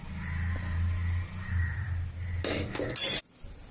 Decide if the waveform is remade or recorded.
recorded